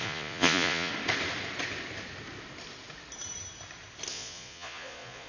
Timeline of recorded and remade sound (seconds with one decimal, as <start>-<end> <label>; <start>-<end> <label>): 0.0-0.9 remade; 0.9-4.1 recorded; 4.1-5.3 remade